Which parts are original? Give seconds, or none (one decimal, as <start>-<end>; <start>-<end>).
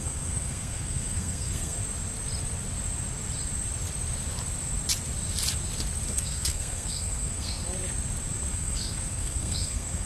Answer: 1.8-6.1; 7.6-8.5